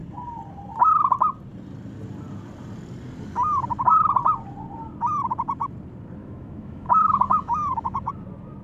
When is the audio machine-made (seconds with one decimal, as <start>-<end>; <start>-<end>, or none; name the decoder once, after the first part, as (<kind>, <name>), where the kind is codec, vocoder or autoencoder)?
6.2-8.1 (autoencoder, DAC-VAE)